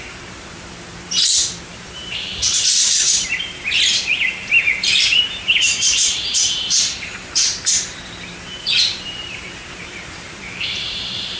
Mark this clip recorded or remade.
remade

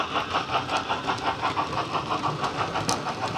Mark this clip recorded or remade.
recorded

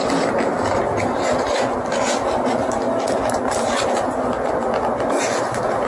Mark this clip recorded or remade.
recorded